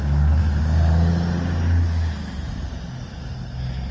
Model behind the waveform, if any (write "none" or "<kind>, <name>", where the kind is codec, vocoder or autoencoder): none